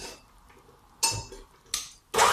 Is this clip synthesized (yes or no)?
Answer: no